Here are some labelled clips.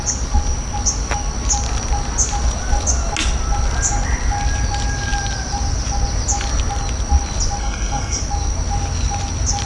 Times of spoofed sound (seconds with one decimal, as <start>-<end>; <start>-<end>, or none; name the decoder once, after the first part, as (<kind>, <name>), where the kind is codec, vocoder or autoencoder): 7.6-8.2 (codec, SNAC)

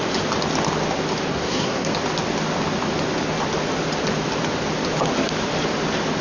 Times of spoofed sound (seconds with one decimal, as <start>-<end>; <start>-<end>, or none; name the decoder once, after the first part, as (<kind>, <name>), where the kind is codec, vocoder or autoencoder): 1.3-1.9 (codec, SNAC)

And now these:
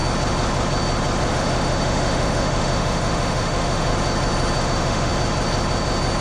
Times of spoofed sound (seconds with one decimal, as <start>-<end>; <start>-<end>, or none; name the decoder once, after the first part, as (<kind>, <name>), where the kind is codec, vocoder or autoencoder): 1.3-3.9 (autoencoder, DAC-VAE); 4.6-5.1

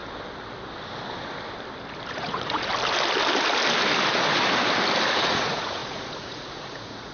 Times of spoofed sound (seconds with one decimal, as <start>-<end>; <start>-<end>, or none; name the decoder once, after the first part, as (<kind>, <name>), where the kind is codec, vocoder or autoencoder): 2.1-2.7 (vocoder, Vocos); 5.1-7.1

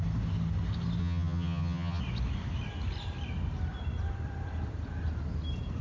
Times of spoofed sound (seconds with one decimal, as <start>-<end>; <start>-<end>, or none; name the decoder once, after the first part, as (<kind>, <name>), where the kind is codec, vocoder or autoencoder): 1.0-2.0 (vocoder, HiFi-GAN)

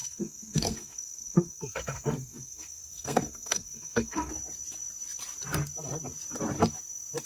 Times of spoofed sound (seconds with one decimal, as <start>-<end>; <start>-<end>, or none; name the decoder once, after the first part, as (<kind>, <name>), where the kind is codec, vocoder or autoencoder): 0.0-4.3 (codec, SNAC)

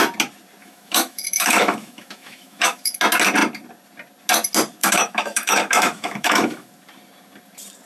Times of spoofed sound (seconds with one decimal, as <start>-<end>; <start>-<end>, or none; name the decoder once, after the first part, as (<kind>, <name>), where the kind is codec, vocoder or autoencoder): 0.6-3.0 (autoencoder, DAC-VAE); 4.8-6.7